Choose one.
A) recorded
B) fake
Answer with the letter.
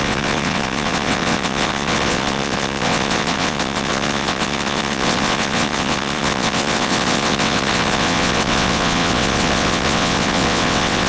B